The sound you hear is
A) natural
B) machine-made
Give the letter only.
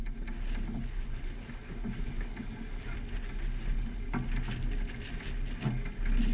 A